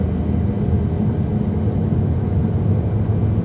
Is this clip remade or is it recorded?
recorded